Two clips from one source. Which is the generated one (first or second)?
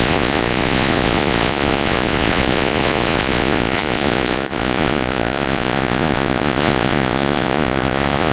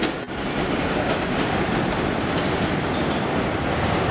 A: first